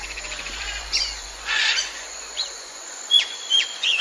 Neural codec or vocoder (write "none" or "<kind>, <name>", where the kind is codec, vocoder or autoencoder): vocoder, Vocos